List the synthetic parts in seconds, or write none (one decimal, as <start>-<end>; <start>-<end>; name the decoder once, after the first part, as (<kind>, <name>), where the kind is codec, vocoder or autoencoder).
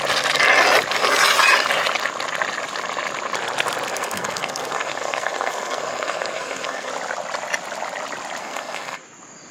3.9-6.9 (codec, SNAC); 8.4-9.0